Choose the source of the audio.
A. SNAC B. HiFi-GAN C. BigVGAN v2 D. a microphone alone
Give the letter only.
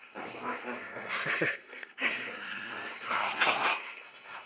A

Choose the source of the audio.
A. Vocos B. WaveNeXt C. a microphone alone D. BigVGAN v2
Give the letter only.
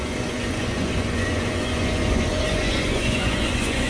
A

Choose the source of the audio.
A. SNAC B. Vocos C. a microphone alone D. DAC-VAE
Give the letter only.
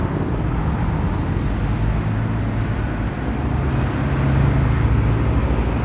C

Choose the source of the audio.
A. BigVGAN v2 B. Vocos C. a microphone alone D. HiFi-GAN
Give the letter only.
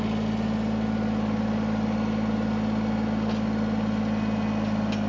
C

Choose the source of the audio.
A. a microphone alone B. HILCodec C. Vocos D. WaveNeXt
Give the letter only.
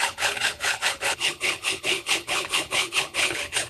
B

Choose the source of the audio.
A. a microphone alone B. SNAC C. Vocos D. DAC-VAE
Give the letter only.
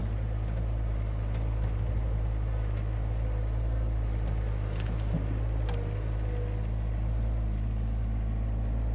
A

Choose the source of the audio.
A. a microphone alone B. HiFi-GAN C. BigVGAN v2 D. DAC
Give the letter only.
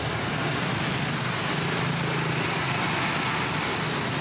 A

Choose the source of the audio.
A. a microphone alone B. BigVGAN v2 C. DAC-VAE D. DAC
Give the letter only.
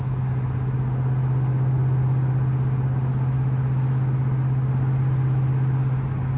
A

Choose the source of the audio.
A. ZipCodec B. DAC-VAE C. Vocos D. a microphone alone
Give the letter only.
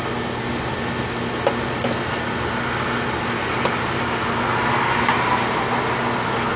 D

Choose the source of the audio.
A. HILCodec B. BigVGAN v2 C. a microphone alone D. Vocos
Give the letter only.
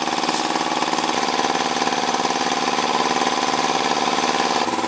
B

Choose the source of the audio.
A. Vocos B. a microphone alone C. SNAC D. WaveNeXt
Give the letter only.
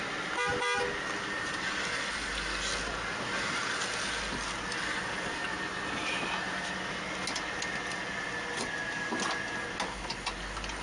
B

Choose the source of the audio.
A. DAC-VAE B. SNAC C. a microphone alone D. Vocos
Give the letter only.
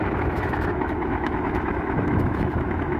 A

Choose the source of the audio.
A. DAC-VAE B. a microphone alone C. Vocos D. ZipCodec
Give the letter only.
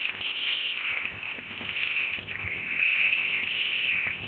D